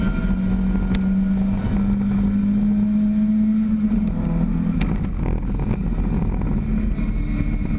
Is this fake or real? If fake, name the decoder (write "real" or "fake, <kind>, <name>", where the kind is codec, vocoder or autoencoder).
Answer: real